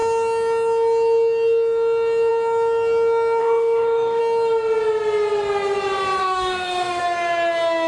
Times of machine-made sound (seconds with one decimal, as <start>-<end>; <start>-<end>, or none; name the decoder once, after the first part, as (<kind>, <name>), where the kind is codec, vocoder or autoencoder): 3.4-4.2 (codec, DAC); 6.2-7.0